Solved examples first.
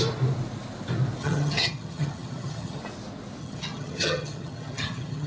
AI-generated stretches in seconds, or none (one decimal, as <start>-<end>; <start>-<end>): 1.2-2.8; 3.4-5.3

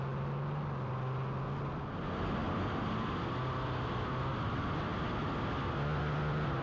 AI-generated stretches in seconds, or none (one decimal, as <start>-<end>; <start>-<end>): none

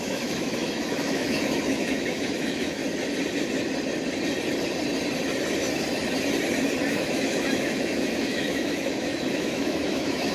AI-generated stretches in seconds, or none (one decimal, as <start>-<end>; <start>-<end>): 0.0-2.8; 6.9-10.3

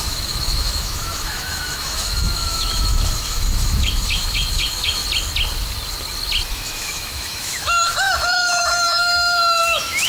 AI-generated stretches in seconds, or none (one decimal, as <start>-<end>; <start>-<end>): 0.0-5.0; 6.5-10.1